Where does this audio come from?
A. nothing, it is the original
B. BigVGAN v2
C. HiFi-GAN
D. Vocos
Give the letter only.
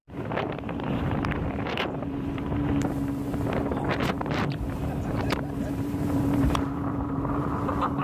B